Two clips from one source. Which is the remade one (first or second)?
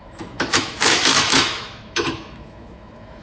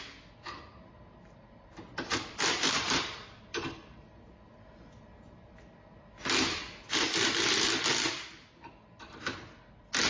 first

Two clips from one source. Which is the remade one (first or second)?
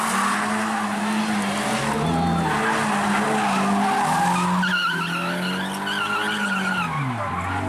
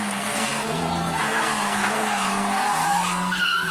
second